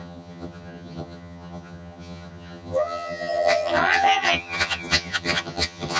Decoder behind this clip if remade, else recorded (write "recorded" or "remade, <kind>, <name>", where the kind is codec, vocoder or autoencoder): remade, vocoder, HiFi-GAN